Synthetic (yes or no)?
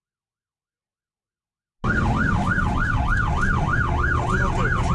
no